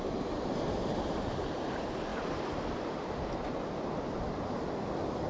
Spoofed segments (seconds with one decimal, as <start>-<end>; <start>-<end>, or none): none